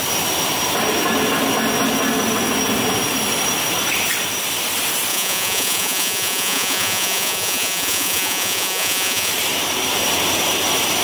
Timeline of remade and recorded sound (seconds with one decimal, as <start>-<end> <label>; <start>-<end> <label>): 0.0-5.1 recorded; 5.1-9.3 remade; 9.3-11.0 recorded